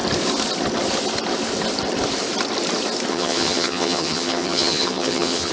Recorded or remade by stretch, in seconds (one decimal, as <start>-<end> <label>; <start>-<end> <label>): 0.0-3.1 recorded; 3.1-5.5 remade